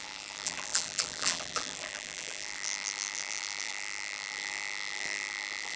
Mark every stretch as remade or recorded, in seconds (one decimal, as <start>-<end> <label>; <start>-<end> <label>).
0.0-5.8 remade